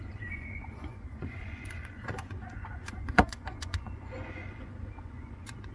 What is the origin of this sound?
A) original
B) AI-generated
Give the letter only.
B